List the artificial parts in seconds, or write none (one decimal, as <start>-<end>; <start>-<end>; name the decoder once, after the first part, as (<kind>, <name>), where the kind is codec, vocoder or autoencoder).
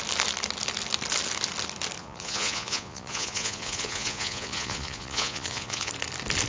2.0-5.9 (vocoder, Vocos)